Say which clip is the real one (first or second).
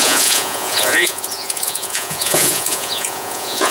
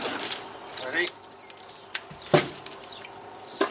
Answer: second